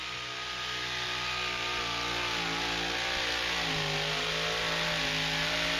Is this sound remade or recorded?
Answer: recorded